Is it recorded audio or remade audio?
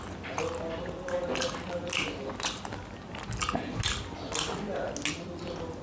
recorded